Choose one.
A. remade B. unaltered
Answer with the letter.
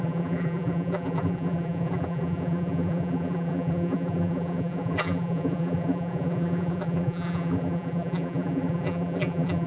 A